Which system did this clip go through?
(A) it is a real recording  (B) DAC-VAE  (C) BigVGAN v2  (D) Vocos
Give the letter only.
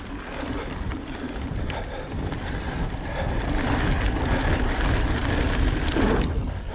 C